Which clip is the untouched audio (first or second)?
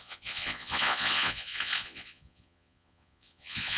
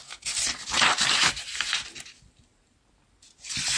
second